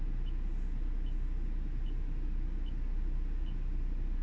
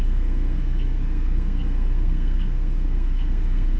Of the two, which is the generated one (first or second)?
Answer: second